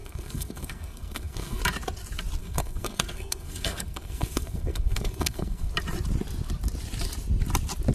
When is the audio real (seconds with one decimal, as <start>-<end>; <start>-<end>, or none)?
1.6-2.4; 5.7-7.9